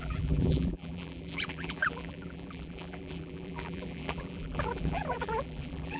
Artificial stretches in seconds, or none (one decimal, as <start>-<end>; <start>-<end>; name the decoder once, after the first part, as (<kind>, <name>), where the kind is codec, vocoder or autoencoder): 0.0-6.0 (vocoder, BigVGAN v2)